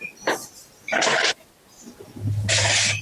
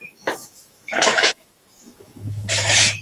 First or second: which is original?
first